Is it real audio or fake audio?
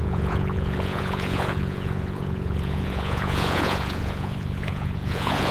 fake